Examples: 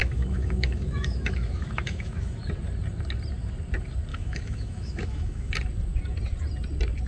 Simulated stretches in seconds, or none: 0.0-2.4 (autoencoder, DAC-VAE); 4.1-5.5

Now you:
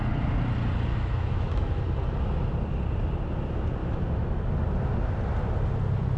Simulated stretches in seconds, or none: 0.9-1.8 (autoencoder, DAC-VAE); 3.8-4.5

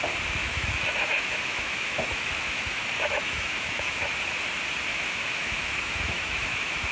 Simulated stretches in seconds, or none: 0.4-4.1 (autoencoder, DAC-VAE); 4.9-6.9